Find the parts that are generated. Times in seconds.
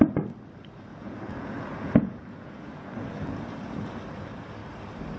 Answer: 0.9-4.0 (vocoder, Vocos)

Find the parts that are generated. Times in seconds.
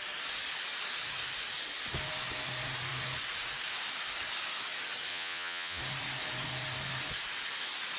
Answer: 5.1-5.8 (vocoder, Vocos)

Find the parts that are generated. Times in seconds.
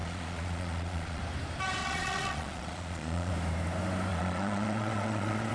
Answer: 0.0-1.2 (vocoder, Vocos); 1.8-3.3; 4.1-5.5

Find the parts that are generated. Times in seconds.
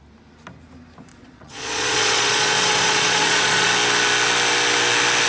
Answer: 1.1-3.7 (vocoder, Vocos)